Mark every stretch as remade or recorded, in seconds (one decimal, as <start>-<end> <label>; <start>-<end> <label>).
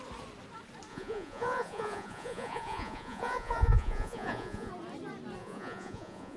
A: 0.0-0.9 recorded; 0.9-4.7 remade; 4.7-5.4 recorded; 5.4-6.4 remade